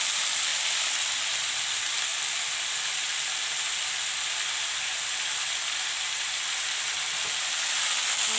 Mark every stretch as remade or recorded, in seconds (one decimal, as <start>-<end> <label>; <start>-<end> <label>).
0.0-8.4 recorded